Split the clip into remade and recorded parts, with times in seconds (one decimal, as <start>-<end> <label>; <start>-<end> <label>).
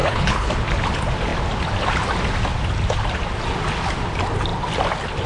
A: 0.0-0.5 remade; 0.5-5.3 recorded